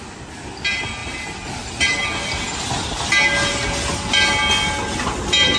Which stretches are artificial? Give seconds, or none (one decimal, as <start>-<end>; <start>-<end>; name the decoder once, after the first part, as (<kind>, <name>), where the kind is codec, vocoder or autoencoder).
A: none